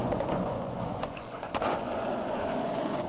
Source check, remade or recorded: remade